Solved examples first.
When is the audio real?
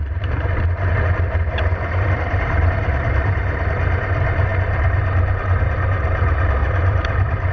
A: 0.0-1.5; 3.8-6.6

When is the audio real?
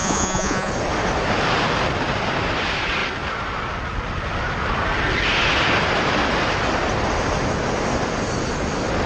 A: 0.7-9.1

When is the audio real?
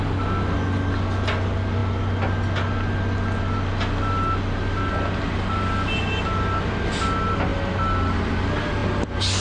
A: 0.0-9.4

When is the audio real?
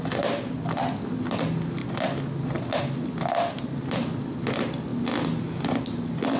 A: 0.0-6.4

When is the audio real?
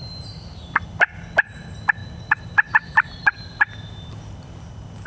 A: 0.0-5.1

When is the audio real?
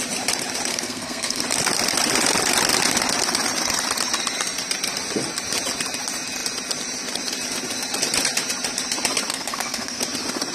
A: 0.0-0.7; 1.4-9.3; 10.0-10.5